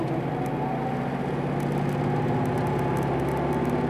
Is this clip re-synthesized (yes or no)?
no